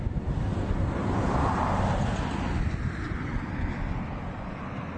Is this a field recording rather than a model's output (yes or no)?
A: yes